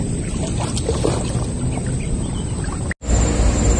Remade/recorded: recorded